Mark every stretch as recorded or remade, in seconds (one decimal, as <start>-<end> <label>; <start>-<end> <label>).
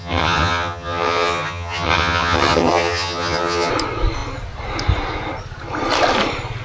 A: 0.0-3.7 remade; 3.7-6.6 recorded